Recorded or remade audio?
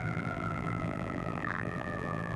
remade